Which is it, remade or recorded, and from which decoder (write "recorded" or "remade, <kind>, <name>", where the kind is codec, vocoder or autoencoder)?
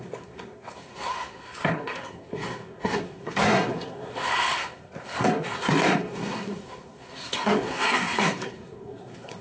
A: remade, codec, SNAC